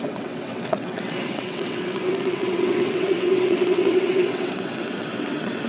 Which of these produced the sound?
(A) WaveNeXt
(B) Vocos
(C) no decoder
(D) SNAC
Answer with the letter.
A